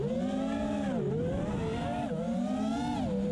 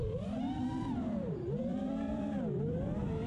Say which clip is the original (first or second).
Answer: first